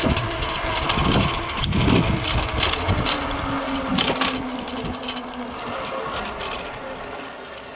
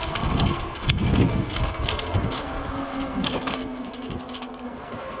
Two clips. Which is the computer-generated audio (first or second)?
second